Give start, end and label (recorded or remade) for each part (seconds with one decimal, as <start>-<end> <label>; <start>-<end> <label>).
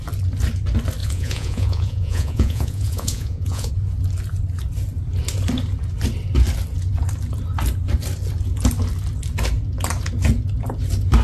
0.0-1.0 recorded; 1.0-3.7 remade; 3.7-11.2 recorded